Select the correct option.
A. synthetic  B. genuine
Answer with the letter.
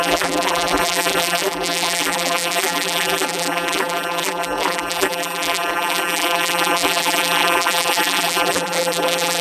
A